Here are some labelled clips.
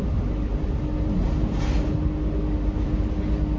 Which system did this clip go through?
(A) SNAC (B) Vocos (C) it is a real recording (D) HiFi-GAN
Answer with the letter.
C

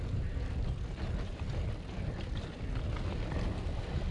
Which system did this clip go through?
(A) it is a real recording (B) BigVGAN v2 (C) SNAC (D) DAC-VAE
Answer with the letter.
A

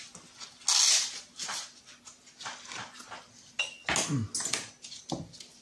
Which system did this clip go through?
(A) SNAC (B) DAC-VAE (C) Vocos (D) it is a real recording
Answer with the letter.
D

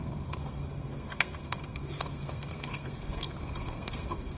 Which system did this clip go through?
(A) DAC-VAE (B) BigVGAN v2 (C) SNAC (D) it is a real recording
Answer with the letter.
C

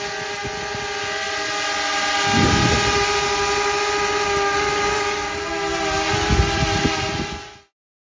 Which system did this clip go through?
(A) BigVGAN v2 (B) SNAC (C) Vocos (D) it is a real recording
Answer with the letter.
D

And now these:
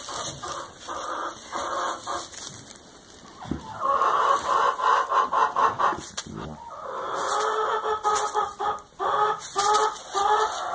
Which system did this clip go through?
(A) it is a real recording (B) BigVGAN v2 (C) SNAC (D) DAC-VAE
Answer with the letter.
A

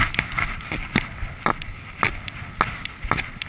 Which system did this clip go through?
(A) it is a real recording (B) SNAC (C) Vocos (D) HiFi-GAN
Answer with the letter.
A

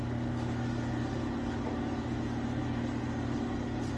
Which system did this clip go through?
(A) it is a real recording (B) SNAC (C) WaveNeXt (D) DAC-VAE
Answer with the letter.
A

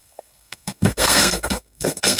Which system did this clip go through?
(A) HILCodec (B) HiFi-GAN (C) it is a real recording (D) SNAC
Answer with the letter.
D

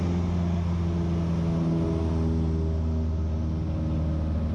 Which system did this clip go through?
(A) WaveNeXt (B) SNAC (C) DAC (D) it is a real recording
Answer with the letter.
D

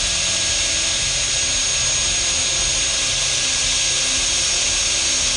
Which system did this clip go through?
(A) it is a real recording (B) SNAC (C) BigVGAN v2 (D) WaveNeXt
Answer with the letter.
A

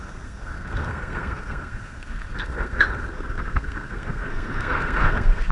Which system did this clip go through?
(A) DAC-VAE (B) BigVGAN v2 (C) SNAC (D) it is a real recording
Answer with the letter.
C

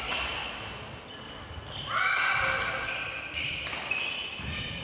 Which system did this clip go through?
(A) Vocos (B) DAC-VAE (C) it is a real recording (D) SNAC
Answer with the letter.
C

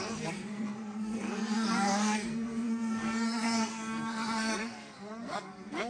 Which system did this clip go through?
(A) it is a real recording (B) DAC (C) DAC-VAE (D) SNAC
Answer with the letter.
D